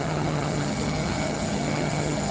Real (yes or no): no